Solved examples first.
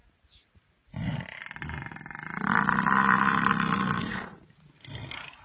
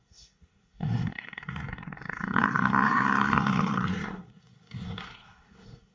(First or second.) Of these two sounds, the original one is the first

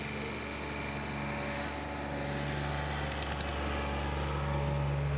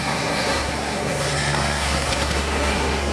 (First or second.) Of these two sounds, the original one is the first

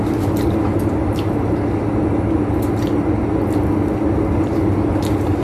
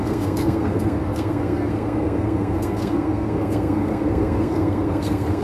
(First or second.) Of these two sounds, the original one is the first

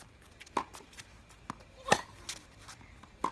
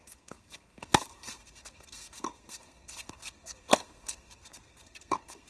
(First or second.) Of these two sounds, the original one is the first